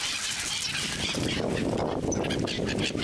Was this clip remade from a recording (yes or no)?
no